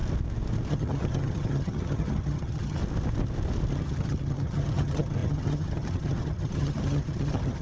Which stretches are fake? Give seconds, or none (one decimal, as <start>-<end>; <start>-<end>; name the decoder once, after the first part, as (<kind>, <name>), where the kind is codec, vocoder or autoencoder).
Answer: 0.7-2.8 (vocoder, HiFi-GAN); 3.7-7.6